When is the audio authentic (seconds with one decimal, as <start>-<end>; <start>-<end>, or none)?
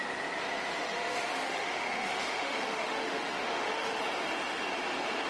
0.0-0.8; 4.0-5.3